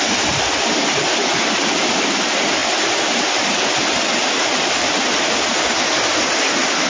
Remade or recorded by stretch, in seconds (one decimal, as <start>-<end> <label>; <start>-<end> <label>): 0.0-6.9 recorded